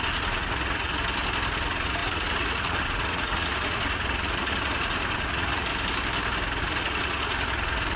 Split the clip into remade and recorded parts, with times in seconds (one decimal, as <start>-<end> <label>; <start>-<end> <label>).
0.0-1.0 remade; 1.0-1.6 recorded; 1.6-5.7 remade; 5.7-6.6 recorded; 6.6-8.0 remade